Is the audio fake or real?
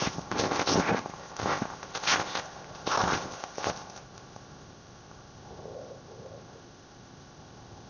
fake